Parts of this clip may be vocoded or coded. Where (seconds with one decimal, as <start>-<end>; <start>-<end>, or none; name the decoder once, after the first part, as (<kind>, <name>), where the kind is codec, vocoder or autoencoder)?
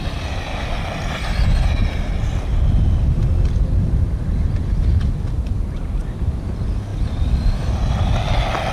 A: none